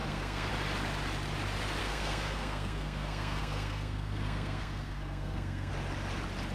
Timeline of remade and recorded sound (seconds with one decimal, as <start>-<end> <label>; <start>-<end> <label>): 0.0-0.5 remade; 0.5-1.8 recorded; 1.8-5.7 remade; 5.7-6.5 recorded